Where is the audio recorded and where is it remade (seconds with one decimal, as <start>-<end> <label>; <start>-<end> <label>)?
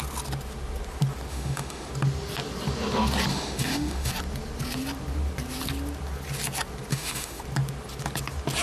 0.0-1.3 recorded; 1.3-1.9 remade; 1.9-3.3 recorded; 3.3-4.1 remade; 4.1-6.9 recorded; 6.9-7.4 remade; 7.4-8.6 recorded